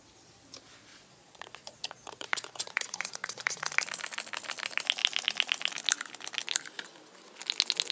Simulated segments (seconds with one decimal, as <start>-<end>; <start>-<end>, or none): 0.9-3.6